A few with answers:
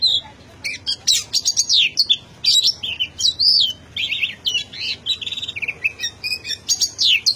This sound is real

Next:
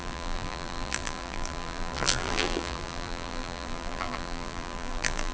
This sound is fake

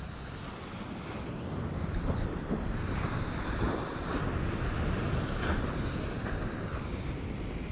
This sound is real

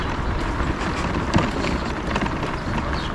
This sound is real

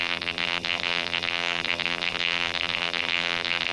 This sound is fake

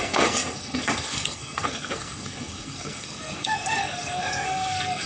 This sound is fake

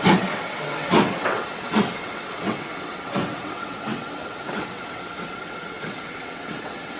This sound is fake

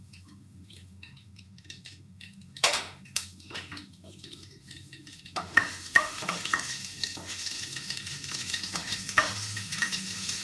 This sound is fake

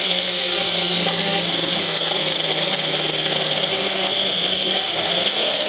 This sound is fake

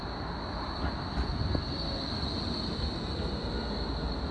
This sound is real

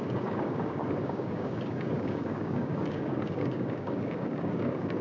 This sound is fake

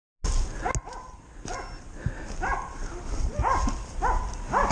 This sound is real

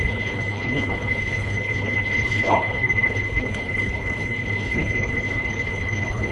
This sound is fake